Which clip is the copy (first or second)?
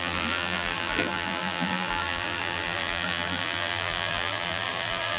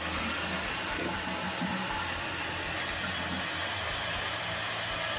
first